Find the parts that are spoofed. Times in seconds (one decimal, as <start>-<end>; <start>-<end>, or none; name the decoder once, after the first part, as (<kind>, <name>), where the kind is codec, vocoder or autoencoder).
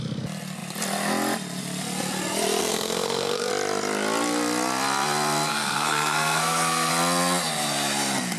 2.6-3.5 (codec, SNAC); 5.5-6.9